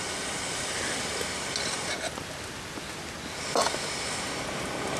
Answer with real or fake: real